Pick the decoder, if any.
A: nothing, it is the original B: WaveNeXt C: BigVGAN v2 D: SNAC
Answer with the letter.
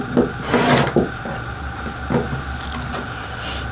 A